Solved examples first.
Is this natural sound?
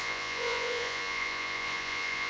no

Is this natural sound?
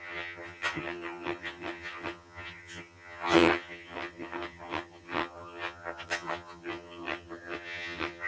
no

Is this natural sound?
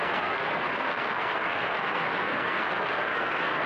no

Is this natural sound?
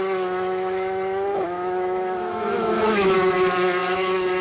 no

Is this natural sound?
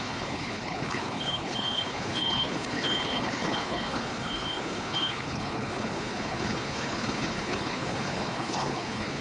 no